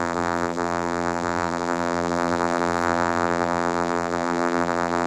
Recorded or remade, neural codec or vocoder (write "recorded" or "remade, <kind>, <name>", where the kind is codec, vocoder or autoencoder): remade, vocoder, BigVGAN v2